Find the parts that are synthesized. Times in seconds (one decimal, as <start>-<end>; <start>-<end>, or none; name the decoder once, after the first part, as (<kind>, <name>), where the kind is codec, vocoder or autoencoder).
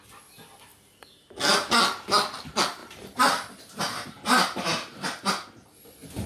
2.8-5.3 (vocoder, BigVGAN v2)